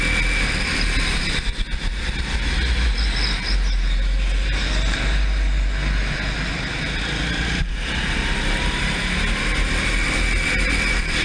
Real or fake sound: real